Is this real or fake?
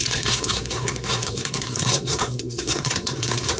fake